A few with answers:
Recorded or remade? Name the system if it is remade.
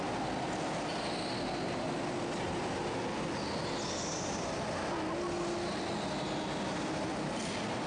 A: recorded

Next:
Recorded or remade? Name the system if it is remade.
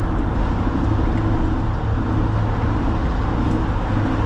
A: recorded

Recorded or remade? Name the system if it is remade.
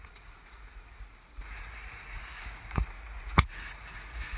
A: remade, vocoder, Vocos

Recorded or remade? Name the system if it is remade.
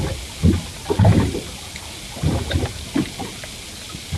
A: recorded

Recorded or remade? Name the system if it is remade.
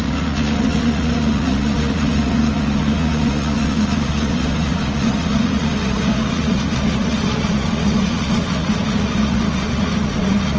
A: remade, vocoder, Vocos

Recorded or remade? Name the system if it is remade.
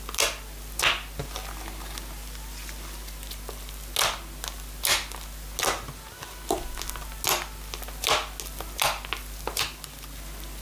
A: recorded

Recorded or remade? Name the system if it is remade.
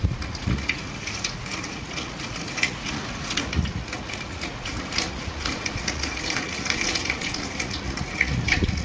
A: remade, vocoder, Vocos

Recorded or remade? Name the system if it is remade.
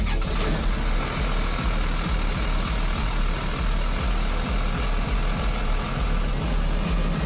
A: recorded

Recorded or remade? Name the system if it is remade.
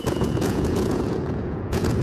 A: remade, vocoder, Vocos